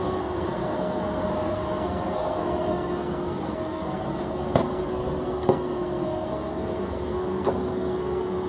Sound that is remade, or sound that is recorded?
remade